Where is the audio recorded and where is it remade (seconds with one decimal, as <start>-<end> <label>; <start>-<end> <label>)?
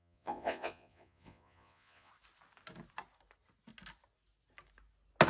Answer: 0.0-2.1 remade; 2.1-5.3 recorded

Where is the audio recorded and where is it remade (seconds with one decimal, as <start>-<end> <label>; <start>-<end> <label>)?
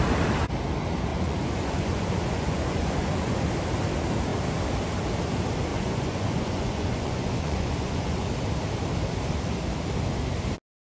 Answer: 0.0-1.1 recorded; 1.1-3.5 remade; 3.5-5.7 recorded; 5.7-8.3 remade; 8.3-10.9 recorded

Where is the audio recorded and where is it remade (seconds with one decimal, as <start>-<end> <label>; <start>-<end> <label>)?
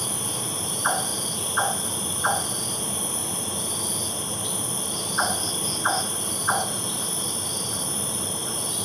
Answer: 0.0-1.1 remade; 1.1-4.8 recorded; 4.8-8.8 remade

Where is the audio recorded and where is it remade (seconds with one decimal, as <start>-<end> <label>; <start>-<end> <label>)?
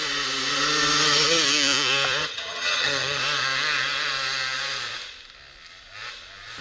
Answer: 0.0-2.2 recorded; 2.2-3.2 remade; 3.2-6.6 recorded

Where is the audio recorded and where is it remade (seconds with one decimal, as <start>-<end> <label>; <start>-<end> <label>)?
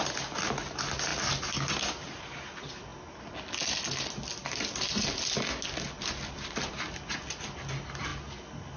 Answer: 0.0-8.8 recorded